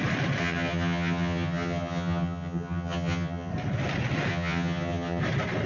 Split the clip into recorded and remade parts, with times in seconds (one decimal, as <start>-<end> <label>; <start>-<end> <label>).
0.0-0.4 recorded; 0.4-3.5 remade; 3.5-4.3 recorded; 4.3-5.2 remade; 5.2-5.7 recorded